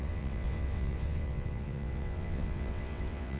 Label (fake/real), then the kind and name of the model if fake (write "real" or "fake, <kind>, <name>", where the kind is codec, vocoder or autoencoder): fake, vocoder, WaveNeXt